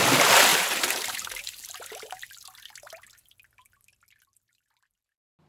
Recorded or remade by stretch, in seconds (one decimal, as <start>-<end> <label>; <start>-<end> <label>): 0.0-0.5 recorded; 0.5-2.3 remade; 2.3-5.5 recorded